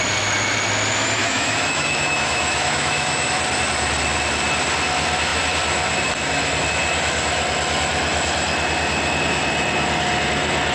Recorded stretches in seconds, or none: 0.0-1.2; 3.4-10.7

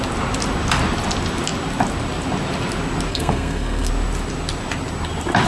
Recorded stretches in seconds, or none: 0.0-3.1; 3.9-5.5